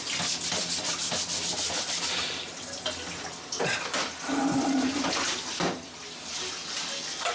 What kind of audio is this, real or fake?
real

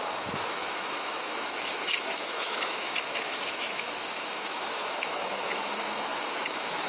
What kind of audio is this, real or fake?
fake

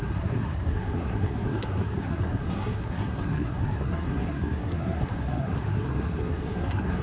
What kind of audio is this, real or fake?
fake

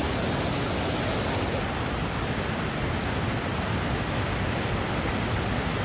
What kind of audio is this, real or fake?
real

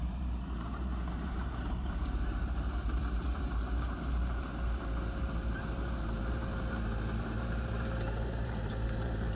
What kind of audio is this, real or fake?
fake